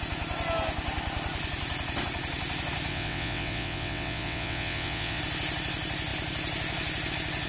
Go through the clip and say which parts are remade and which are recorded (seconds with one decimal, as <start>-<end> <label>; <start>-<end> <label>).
0.0-2.9 recorded; 2.9-5.2 remade; 5.2-7.5 recorded